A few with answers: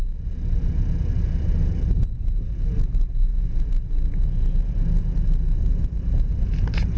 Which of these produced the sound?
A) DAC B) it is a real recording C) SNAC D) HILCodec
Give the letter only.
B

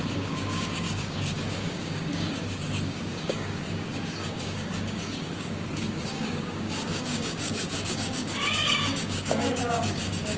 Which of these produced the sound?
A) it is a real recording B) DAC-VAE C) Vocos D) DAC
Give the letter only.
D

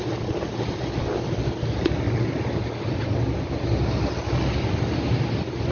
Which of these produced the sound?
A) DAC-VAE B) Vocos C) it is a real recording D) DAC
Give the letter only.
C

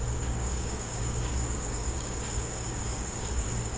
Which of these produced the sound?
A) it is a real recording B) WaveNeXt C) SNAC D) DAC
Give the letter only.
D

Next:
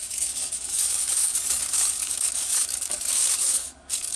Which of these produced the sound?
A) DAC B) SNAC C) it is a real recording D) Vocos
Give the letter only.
A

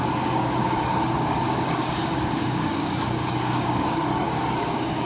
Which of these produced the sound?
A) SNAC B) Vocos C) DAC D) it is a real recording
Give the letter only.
C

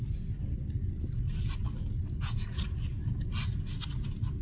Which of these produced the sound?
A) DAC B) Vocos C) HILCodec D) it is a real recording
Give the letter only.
D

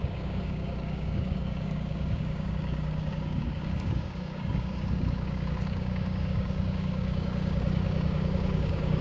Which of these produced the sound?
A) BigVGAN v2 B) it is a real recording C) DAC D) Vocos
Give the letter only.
C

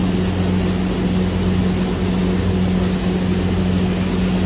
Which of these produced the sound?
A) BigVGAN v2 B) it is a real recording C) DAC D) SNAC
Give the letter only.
B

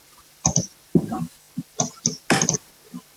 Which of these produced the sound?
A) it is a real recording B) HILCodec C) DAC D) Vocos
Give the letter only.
A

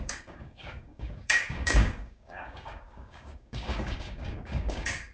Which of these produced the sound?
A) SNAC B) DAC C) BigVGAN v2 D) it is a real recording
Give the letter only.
B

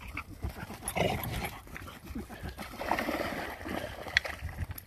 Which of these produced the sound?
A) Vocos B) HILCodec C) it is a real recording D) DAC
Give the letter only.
C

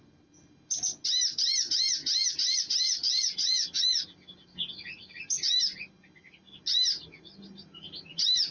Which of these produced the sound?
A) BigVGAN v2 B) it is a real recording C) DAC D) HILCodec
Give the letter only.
B